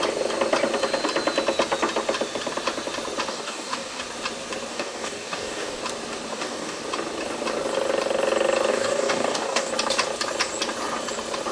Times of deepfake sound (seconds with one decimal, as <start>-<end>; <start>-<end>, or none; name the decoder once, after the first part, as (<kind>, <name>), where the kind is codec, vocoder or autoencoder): 3.3-4.0 (codec, DAC); 4.7-5.8; 6.3-6.8; 8.7-9.7